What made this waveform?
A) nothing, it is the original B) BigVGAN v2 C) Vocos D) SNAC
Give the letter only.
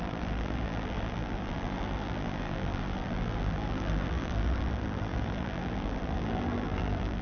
B